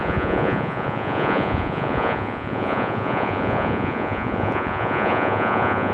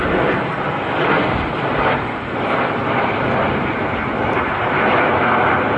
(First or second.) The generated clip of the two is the first